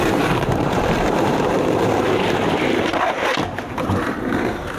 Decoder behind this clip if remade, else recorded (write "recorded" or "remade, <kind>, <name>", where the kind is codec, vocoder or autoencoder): remade, vocoder, BigVGAN v2